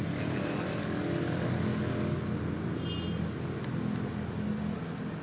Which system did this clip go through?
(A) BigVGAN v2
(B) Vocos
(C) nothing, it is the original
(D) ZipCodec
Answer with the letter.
C